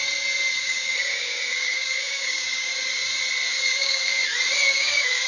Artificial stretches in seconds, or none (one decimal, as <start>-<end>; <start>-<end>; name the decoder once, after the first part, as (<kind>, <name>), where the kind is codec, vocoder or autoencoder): 0.5-2.7 (codec, DAC); 3.5-4.2; 4.7-5.3